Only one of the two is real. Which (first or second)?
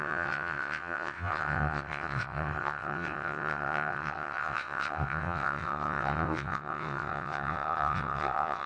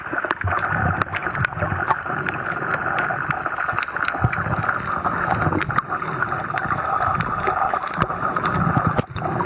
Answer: second